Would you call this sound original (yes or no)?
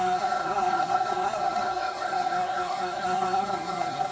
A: no